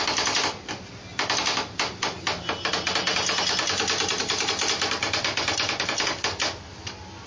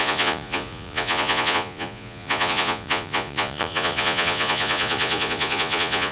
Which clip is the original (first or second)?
first